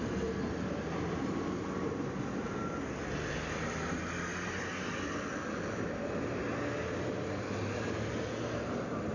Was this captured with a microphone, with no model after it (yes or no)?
yes